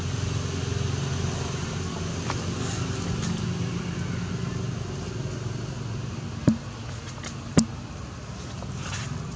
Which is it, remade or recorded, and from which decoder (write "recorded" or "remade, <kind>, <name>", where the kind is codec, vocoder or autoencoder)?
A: recorded